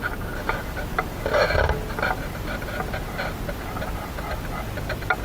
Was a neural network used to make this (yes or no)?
no